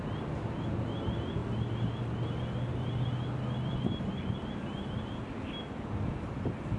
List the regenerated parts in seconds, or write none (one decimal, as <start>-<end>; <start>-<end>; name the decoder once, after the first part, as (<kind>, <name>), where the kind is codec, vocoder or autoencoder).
none